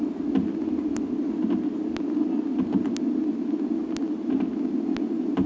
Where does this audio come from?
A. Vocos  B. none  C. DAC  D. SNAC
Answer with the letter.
B